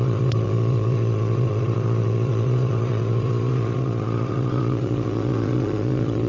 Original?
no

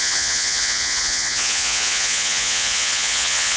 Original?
no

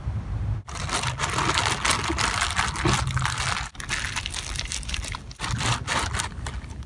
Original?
yes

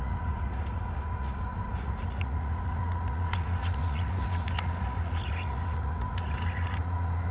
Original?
no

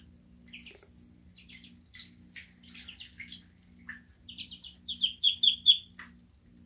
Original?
yes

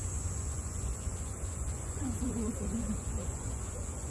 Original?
no